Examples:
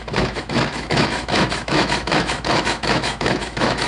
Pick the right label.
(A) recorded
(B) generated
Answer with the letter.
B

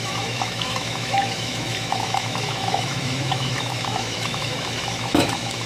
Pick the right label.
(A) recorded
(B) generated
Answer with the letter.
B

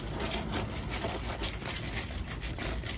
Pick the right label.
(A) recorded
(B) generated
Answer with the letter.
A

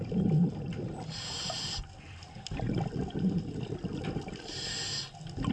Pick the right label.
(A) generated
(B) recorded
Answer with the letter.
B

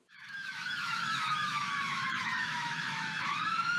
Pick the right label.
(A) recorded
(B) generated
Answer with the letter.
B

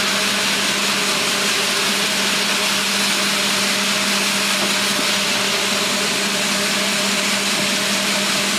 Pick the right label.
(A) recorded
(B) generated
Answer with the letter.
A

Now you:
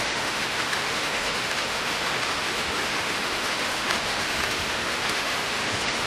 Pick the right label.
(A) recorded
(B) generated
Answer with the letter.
B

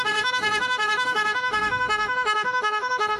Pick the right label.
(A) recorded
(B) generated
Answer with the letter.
B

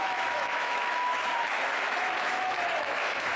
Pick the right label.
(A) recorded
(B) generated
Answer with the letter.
B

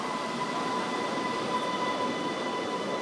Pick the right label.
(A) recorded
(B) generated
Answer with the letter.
A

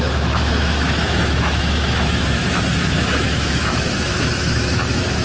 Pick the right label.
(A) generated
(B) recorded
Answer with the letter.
A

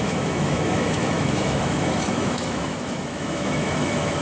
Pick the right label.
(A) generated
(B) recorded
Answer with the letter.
A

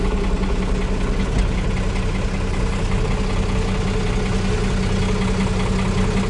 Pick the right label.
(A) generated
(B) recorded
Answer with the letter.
B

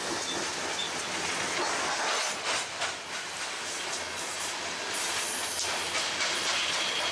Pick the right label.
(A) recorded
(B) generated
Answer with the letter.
A